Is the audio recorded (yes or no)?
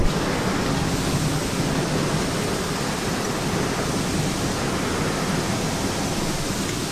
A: yes